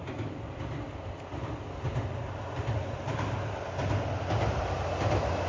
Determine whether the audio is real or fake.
real